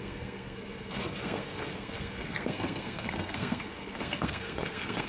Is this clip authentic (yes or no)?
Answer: no